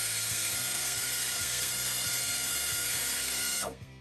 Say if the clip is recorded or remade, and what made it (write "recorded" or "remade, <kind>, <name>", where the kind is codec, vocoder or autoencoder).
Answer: remade, codec, SNAC